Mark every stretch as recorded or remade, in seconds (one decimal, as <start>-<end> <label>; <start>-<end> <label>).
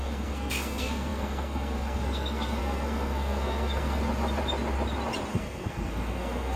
0.0-4.0 remade; 4.0-5.3 recorded; 5.3-6.6 remade